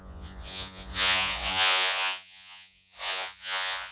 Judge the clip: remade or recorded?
remade